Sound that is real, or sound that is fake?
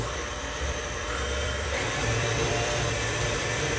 fake